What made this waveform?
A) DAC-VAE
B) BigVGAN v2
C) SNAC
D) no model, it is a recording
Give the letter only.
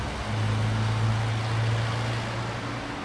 D